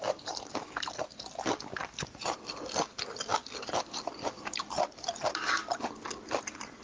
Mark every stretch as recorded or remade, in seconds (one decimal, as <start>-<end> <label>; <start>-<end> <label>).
0.0-5.6 remade; 5.6-6.8 recorded